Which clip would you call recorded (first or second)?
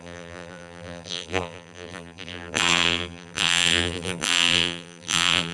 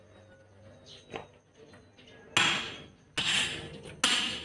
second